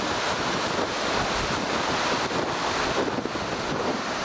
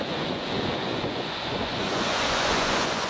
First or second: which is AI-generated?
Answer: second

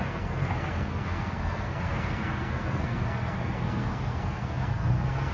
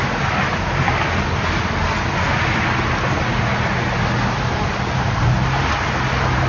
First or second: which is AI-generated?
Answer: first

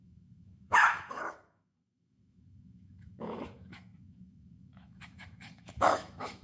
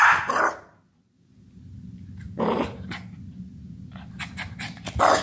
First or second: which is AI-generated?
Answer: first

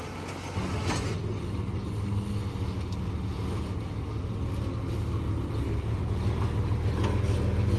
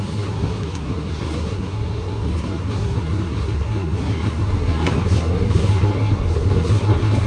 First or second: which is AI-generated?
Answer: second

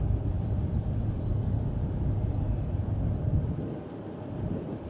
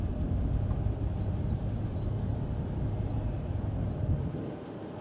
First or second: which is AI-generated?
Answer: first